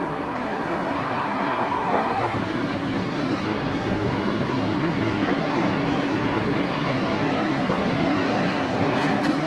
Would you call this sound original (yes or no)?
no